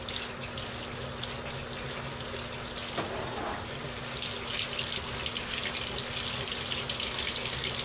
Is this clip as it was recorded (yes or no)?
yes